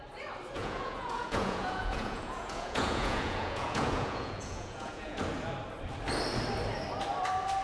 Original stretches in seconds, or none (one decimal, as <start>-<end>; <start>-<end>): 0.0-0.6; 5.2-7.6